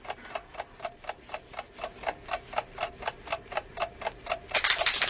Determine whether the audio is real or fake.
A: real